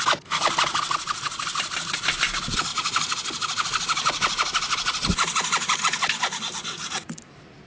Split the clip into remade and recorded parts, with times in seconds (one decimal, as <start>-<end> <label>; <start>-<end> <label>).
0.0-7.7 recorded